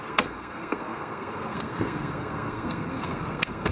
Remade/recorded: remade